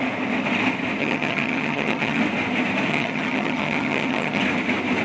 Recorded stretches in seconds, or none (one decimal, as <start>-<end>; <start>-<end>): 0.0-1.0; 2.2-2.9; 4.4-5.0

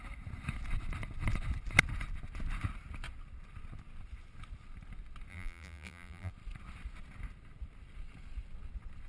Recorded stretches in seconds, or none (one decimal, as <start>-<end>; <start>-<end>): 0.0-5.3; 6.3-9.1

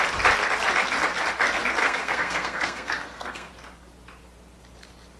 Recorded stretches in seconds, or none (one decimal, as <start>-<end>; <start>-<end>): 0.0-1.8; 3.5-5.2

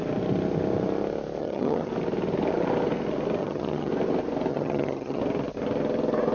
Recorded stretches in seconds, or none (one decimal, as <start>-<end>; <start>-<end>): 0.0-1.4; 1.9-3.4; 3.9-4.5; 5.2-6.3

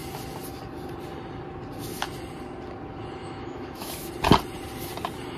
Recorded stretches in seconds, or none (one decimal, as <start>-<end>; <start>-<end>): 0.0-3.2; 4.1-5.4